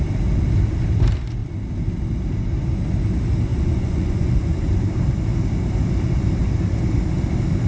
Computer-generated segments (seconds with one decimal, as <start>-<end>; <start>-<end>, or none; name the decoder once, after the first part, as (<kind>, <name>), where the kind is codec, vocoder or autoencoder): 3.5-4.6 (vocoder, Vocos)